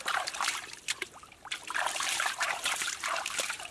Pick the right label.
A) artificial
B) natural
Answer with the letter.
A